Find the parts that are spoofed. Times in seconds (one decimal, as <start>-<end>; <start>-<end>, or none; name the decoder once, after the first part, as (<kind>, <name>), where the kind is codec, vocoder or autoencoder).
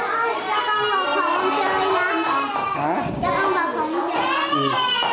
none